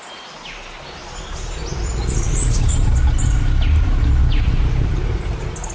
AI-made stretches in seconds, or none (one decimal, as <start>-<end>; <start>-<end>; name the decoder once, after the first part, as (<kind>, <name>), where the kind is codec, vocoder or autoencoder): none